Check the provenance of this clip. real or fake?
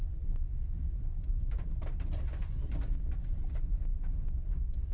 real